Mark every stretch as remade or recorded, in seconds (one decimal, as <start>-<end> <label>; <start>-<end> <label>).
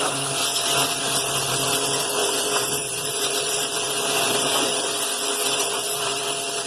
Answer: 0.0-2.2 recorded; 2.2-6.2 remade; 6.2-6.7 recorded